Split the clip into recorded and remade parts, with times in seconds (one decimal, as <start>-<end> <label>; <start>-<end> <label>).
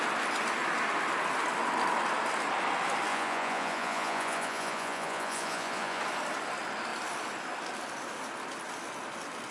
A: 0.0-3.1 recorded; 3.1-6.0 remade; 6.0-9.5 recorded